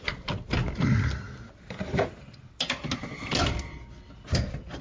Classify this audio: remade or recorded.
recorded